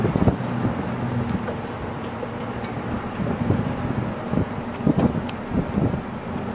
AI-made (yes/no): no